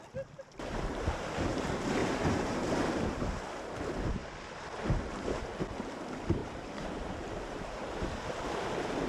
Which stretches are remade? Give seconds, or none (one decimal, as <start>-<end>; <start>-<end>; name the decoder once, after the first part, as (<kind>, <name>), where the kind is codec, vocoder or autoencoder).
2.0-2.8 (vocoder, BigVGAN v2); 6.4-7.9